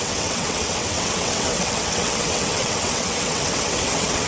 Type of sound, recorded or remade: remade